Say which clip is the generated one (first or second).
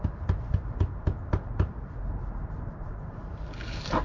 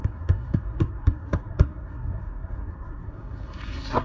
second